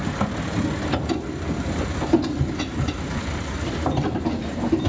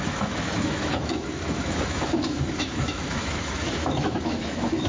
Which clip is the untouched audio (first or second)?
first